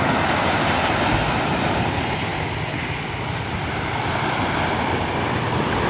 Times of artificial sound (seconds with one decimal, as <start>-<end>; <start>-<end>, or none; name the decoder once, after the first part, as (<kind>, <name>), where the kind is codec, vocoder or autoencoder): none